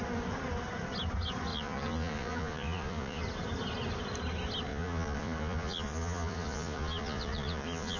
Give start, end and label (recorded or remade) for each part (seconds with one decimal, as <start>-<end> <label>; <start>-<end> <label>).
0.0-1.5 recorded; 1.5-3.2 remade; 3.2-4.7 recorded; 4.7-8.0 remade